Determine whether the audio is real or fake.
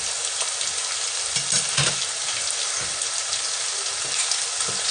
real